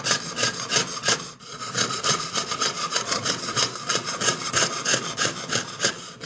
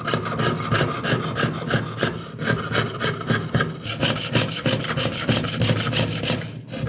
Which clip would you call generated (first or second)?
first